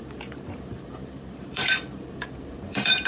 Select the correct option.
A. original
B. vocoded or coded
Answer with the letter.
B